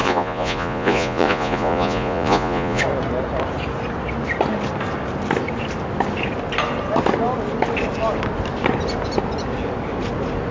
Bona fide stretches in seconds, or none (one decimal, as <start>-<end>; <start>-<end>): 2.8-10.5